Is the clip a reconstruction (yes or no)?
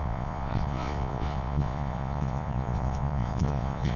yes